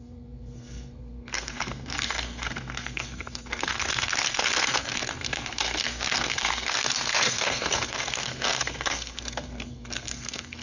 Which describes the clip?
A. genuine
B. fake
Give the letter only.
B